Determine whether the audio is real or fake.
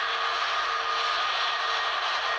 real